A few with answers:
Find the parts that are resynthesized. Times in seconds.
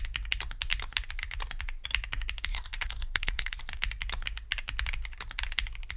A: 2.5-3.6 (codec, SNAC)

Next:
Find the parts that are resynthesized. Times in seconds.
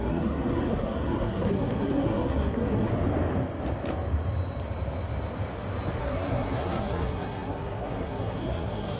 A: 0.0-2.9 (codec, SNAC); 6.0-9.0